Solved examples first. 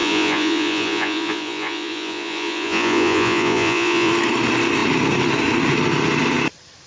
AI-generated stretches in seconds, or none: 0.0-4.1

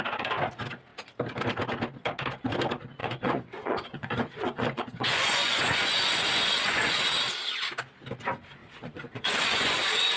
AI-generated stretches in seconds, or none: 3.0-7.0; 8.6-10.2

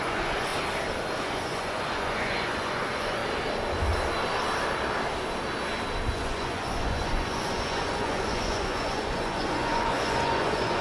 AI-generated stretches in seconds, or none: 0.0-0.5; 1.2-3.2; 6.1-10.8

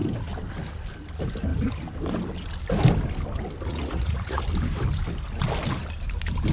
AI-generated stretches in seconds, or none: 3.7-4.4

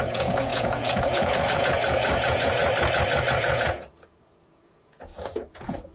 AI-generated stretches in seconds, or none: 0.0-2.6; 3.3-5.9

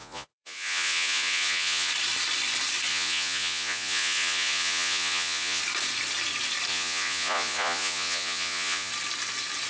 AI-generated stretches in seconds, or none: 0.0-1.9; 2.9-5.6; 6.7-8.9

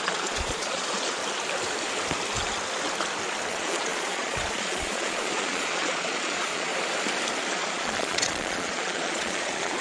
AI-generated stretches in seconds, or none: 0.0-1.2; 3.5-6.7; 7.5-9.8